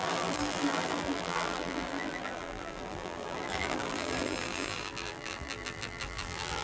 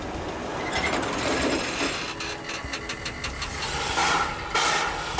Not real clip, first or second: first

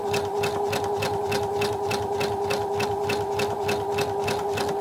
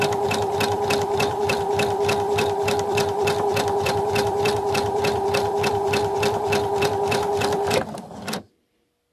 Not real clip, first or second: second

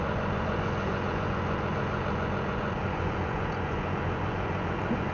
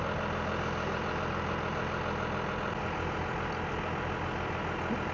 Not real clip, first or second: first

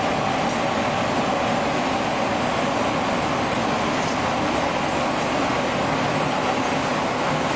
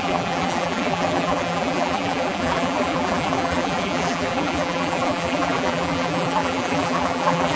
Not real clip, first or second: second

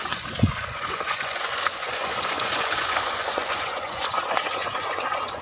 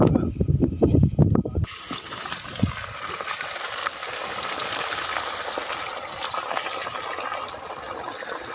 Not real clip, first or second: first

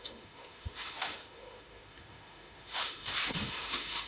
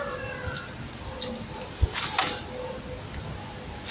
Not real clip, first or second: first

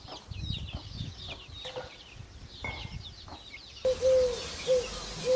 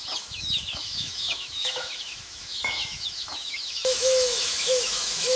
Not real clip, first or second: second